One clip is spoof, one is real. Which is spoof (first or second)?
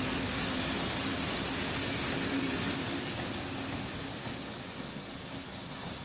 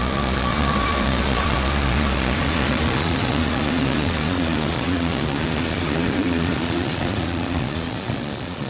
second